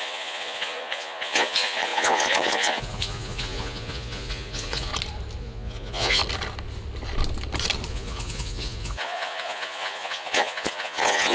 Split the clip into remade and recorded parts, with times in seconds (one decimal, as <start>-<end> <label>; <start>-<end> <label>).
0.0-4.9 remade; 4.9-5.4 recorded; 5.4-6.2 remade; 6.2-7.9 recorded; 7.9-11.3 remade